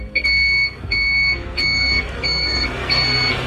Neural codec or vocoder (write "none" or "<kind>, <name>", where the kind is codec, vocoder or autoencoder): codec, SNAC